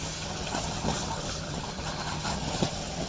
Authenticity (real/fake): fake